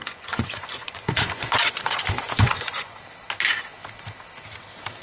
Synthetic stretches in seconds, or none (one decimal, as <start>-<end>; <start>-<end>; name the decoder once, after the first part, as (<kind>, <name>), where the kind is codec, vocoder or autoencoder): 0.0-3.0 (vocoder, Vocos)